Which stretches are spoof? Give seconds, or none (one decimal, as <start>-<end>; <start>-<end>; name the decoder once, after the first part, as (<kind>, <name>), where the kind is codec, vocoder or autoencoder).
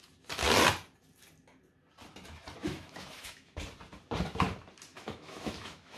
2.6-3.6 (autoencoder, DAC-VAE); 4.9-6.0